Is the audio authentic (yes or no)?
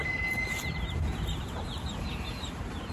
no